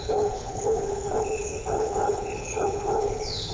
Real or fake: fake